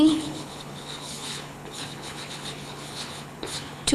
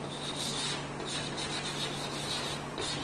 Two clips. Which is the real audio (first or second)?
second